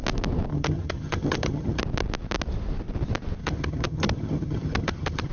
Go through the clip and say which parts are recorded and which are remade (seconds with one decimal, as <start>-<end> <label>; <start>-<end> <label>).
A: 0.0-0.5 recorded; 0.5-1.8 remade; 1.8-3.4 recorded; 3.4-5.3 remade